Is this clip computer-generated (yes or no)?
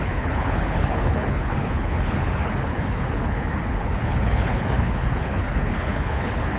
yes